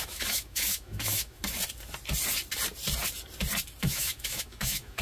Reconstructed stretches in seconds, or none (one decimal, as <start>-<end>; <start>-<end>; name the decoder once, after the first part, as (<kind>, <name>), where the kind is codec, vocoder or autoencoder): 0.0-1.4 (autoencoder, DAC-VAE); 3.8-5.0